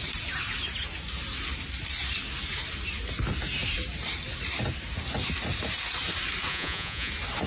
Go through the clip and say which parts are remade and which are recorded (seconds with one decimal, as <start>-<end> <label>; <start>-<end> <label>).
0.0-6.5 recorded; 6.5-7.1 remade; 7.1-7.5 recorded